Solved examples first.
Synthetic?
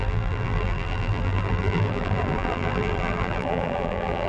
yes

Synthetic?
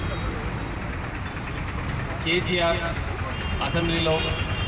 no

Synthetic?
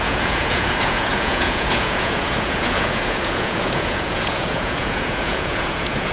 yes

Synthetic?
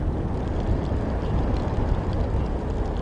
no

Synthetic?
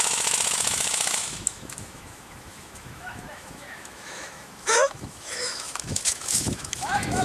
yes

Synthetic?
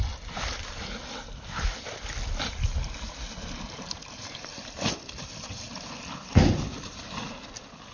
no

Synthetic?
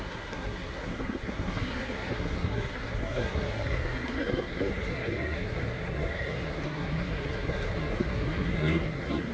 yes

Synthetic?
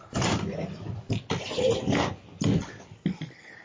no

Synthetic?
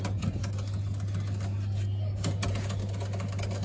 no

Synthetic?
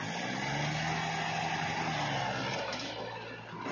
no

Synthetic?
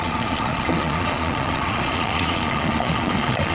yes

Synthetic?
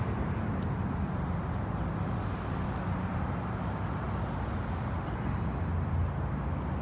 no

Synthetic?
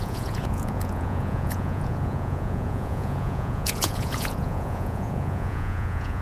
yes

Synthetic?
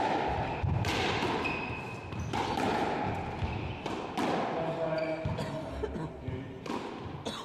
no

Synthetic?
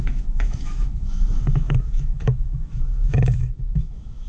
yes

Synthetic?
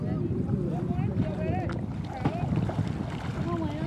no